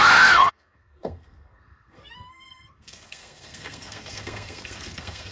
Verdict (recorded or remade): remade